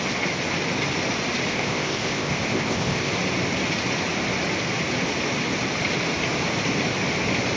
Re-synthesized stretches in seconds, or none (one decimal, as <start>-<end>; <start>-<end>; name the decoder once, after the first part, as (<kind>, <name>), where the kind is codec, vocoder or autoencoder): 1.5-3.1 (codec, ZipCodec)